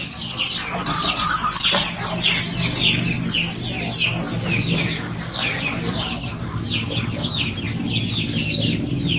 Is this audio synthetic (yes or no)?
no